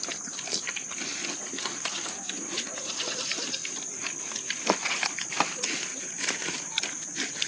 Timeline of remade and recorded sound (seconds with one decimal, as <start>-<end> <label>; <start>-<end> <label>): 0.0-1.4 recorded; 1.4-3.2 remade; 3.2-5.9 recorded; 5.9-6.6 remade; 6.6-7.5 recorded

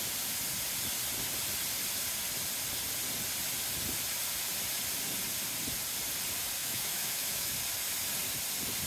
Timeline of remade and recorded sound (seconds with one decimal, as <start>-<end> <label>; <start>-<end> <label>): 0.0-6.6 recorded; 6.6-7.5 remade; 7.5-8.9 recorded

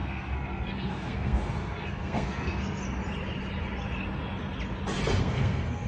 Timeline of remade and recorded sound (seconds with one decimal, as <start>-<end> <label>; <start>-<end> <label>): 0.0-2.8 remade; 2.8-5.2 recorded; 5.2-5.9 remade

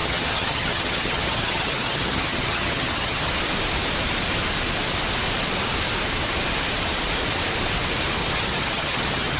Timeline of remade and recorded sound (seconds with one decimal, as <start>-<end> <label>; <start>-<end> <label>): 0.0-3.3 remade; 3.3-8.2 recorded; 8.2-9.4 remade